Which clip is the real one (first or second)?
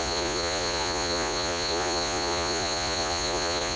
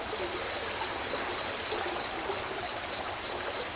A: second